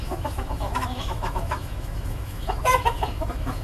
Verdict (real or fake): fake